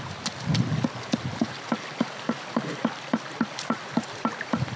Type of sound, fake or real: real